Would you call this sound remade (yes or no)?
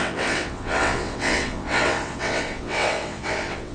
yes